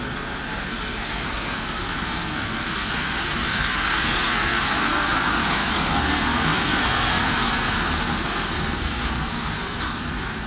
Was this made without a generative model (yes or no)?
no